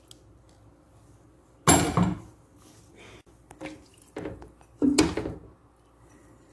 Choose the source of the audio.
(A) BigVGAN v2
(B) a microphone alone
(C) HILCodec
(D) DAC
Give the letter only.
B